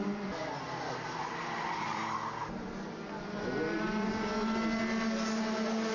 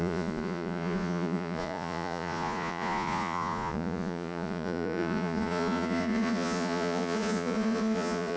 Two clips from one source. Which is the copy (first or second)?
second